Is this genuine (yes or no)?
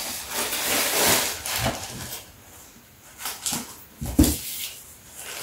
yes